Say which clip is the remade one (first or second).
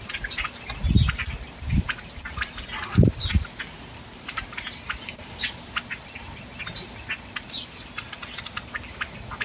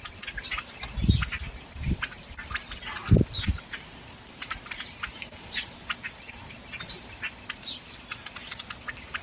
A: second